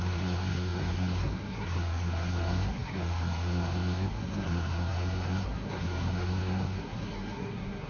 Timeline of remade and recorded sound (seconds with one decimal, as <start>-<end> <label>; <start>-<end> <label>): 0.0-7.9 remade